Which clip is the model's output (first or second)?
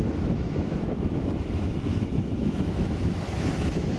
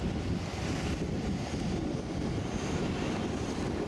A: first